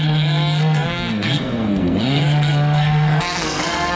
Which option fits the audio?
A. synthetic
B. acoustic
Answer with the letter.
A